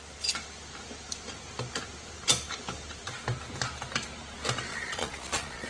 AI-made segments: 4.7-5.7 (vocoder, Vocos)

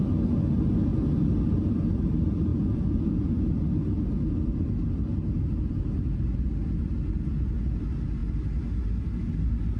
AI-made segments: 2.5-3.3 (vocoder, Vocos)

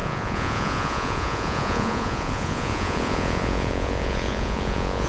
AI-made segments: 0.0-5.1 (vocoder, Vocos)

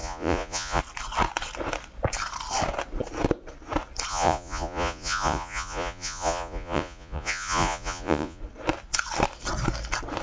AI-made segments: 0.0-0.8 (vocoder, Vocos); 4.1-8.4

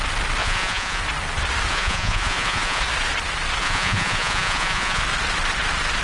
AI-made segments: 0.4-1.0 (vocoder, Vocos); 1.7-2.8; 3.6-5.0

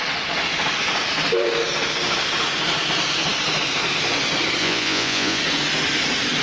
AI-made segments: 4.6-5.4 (vocoder, Vocos)